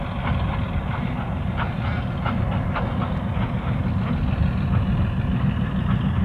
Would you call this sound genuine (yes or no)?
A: yes